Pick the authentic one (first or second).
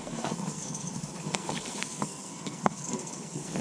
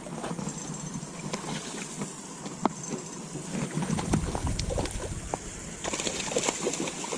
second